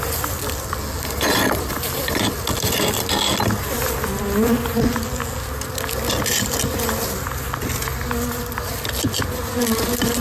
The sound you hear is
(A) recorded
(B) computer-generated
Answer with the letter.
A